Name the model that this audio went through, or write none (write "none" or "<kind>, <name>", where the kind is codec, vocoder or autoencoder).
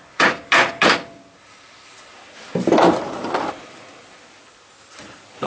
none